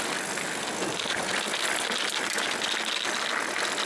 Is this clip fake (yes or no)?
no